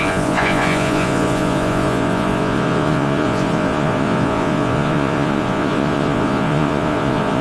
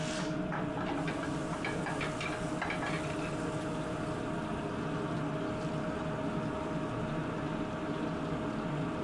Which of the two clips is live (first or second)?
second